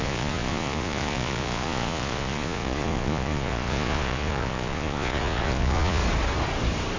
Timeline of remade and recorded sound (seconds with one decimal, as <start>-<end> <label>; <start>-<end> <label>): 0.0-6.0 remade; 6.0-7.0 recorded